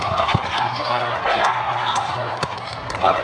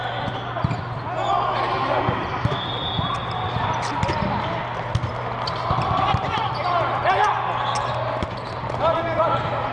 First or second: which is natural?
second